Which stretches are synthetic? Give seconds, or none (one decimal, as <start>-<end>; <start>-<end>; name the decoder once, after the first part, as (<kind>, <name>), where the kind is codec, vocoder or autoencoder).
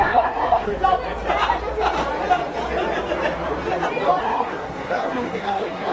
0.0-0.7 (codec, SNAC); 4.2-5.9